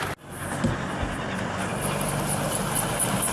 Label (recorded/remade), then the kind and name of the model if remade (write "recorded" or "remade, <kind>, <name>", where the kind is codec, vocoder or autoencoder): recorded